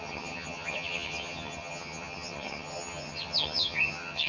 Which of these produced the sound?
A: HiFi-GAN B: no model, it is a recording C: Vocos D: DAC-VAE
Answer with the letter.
A